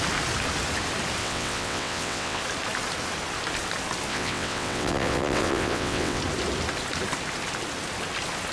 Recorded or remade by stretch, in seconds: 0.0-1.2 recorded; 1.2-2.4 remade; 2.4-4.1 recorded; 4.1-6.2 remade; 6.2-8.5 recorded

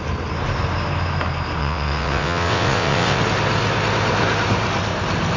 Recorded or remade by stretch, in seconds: 0.0-1.6 recorded; 1.6-3.2 remade; 3.2-5.4 recorded

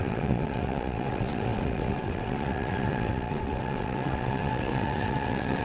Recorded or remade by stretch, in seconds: 0.0-5.6 remade

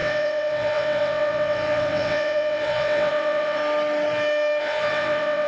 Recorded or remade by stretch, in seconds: 0.0-3.6 remade; 3.6-4.6 recorded; 4.6-5.5 remade